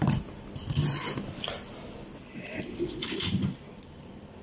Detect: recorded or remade recorded